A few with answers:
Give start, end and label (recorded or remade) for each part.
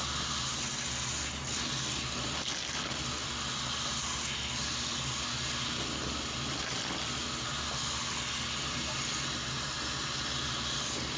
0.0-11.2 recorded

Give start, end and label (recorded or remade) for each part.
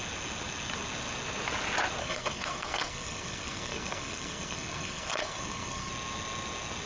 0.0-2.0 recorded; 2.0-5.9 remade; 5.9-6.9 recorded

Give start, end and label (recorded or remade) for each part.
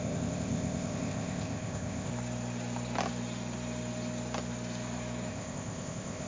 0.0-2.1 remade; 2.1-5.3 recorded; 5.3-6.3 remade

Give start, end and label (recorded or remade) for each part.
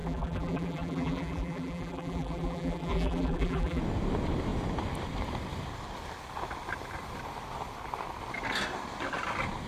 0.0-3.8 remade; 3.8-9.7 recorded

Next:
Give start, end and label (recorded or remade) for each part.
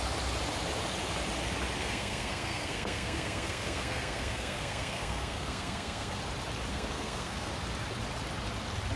0.0-1.8 recorded; 1.8-6.2 remade; 6.2-6.7 recorded; 6.7-7.5 remade; 7.5-9.0 recorded